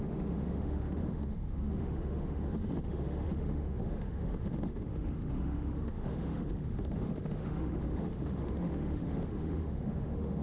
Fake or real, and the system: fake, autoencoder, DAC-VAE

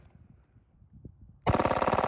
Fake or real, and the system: real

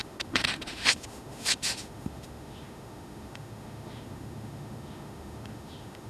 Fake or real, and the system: fake, autoencoder, DAC-VAE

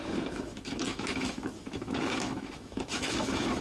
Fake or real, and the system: fake, autoencoder, DAC-VAE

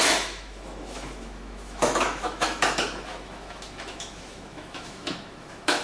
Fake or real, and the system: fake, autoencoder, DAC-VAE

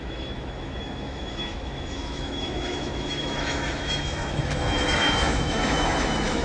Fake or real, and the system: fake, autoencoder, DAC-VAE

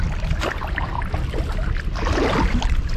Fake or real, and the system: real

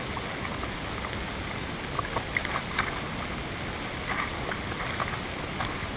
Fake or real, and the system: real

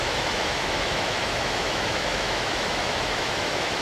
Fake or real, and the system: fake, autoencoder, DAC-VAE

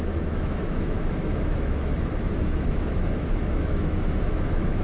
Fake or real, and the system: fake, autoencoder, DAC-VAE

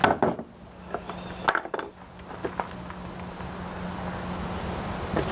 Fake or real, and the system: real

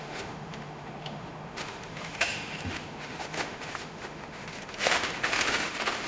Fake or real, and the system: fake, autoencoder, DAC-VAE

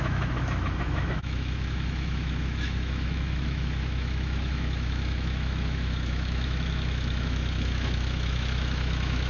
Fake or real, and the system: fake, autoencoder, DAC-VAE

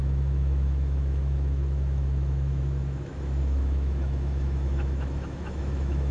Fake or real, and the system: fake, autoencoder, DAC-VAE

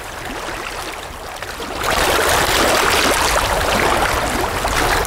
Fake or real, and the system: real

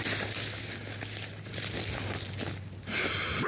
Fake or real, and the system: real